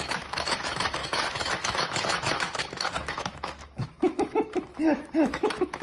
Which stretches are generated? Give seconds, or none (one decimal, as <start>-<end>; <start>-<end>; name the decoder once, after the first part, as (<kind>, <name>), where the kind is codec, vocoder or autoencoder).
0.0-5.8 (autoencoder, DAC-VAE)